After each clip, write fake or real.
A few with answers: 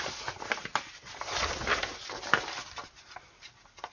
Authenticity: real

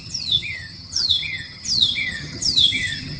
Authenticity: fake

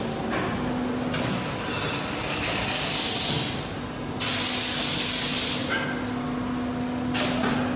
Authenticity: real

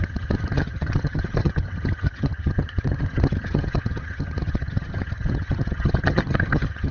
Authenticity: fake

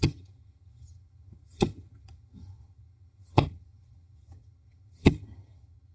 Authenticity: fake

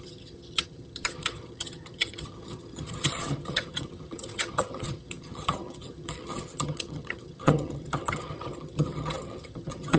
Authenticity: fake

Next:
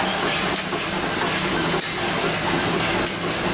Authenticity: real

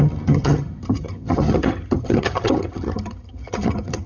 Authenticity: fake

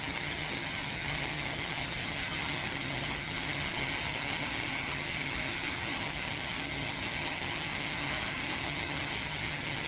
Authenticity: fake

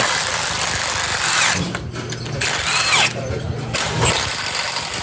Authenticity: real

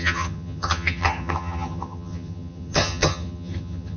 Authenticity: fake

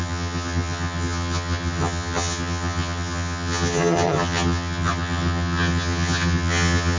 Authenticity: fake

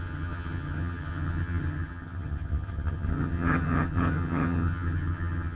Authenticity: fake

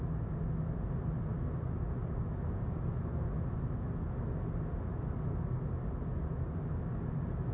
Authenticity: real